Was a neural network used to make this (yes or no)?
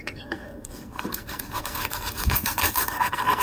yes